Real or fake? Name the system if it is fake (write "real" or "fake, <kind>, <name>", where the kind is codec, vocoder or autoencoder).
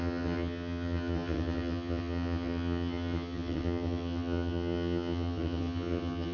fake, vocoder, HiFi-GAN